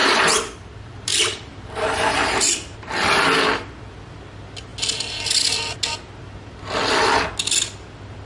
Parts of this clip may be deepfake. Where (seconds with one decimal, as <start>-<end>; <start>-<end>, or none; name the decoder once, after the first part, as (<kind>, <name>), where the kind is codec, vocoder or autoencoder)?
0.0-2.8 (vocoder, BigVGAN v2)